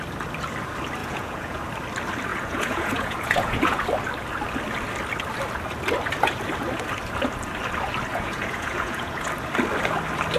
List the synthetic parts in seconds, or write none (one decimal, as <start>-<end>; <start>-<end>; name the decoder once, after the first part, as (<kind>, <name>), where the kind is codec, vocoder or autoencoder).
1.0-1.6 (vocoder, Vocos); 2.3-3.8; 8.1-9.3